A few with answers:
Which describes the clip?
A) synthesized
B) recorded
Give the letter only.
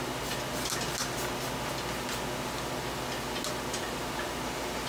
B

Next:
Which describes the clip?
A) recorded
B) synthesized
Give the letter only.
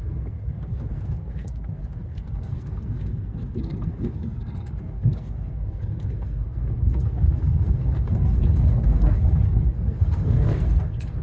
B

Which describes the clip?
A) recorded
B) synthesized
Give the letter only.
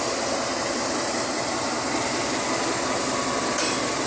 A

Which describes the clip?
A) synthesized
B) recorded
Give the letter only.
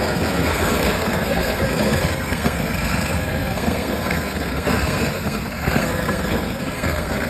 A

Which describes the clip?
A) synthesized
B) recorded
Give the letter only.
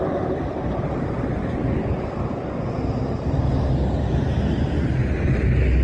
B